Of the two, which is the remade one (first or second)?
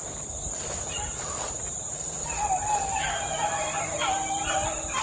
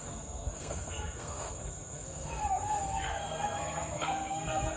second